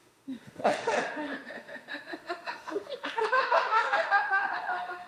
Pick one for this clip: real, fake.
fake